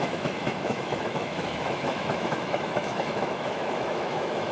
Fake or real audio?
fake